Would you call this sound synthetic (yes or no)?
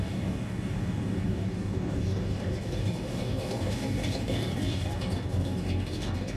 yes